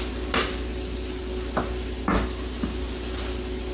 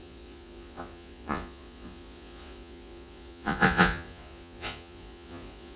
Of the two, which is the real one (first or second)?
first